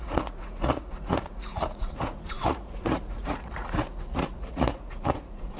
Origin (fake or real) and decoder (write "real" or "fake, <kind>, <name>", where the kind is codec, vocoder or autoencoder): fake, vocoder, Vocos